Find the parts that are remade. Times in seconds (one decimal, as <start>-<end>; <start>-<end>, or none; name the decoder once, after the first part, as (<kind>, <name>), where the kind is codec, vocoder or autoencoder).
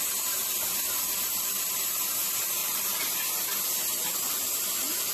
2.6-3.6 (vocoder, BigVGAN v2)